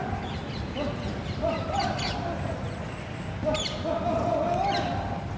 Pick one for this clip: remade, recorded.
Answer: recorded